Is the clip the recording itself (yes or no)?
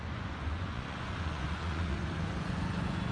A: no